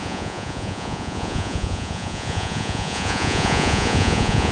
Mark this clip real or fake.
fake